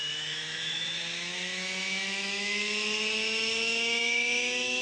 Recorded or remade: remade